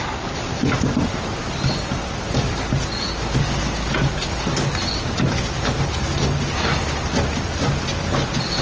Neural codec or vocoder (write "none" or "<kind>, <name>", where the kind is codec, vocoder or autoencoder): none